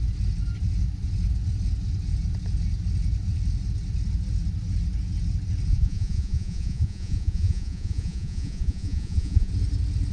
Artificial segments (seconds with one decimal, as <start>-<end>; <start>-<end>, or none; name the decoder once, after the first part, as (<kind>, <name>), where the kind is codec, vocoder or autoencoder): 5.7-9.5 (vocoder, Vocos)